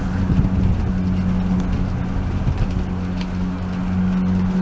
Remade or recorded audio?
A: recorded